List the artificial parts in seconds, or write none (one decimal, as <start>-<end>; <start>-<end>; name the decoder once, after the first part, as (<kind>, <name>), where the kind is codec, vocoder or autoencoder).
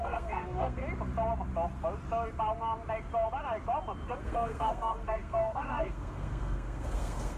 0.0-0.8 (codec, SNAC); 4.2-7.4